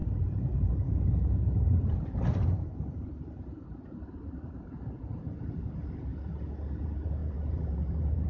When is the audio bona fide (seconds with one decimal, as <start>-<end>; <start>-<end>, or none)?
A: 6.1-6.8